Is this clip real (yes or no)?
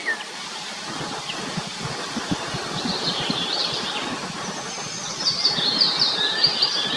yes